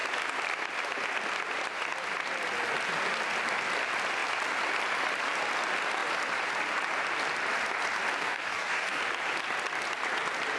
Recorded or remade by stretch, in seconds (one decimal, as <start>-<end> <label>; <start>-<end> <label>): 0.0-8.2 recorded; 8.2-9.0 remade; 9.0-10.6 recorded